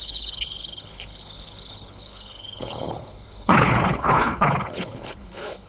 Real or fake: fake